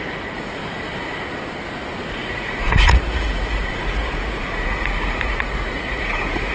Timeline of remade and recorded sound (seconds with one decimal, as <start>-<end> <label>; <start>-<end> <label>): 0.0-0.6 remade; 0.6-2.1 recorded; 2.1-6.5 remade